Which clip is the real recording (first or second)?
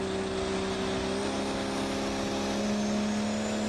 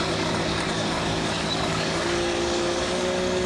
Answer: first